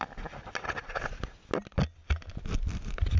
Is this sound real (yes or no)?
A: yes